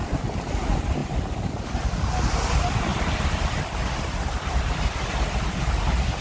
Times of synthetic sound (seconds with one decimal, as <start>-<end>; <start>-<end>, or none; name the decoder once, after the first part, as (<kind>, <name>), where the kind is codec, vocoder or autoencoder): 0.0-0.5 (vocoder, BigVGAN v2); 2.9-3.6